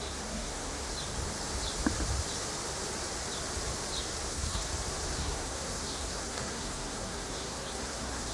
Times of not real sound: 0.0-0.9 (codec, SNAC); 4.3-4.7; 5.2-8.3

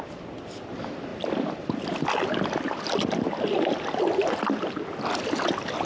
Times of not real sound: none